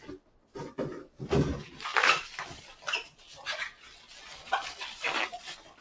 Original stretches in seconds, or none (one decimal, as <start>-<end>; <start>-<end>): 0.0-1.9; 2.6-4.3